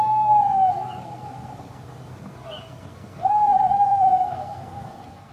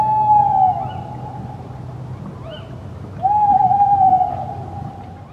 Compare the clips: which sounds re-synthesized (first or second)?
first